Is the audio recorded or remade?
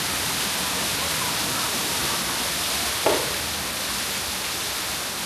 recorded